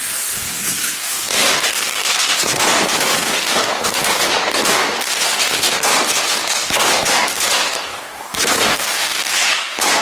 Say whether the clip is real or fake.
fake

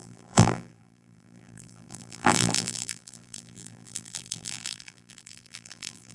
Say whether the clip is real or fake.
fake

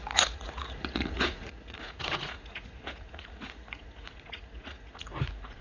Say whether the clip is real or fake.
fake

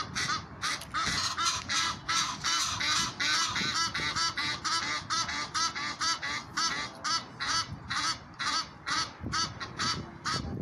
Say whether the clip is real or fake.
fake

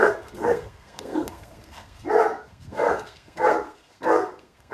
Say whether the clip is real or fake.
fake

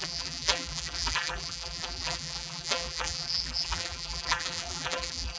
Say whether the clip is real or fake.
fake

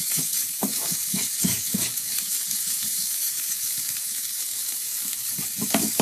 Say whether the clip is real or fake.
fake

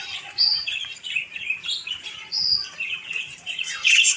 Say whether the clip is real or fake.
fake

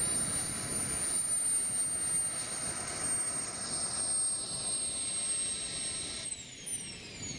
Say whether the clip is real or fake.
real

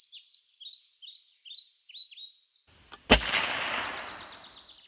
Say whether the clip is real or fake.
real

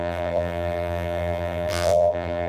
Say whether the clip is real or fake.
fake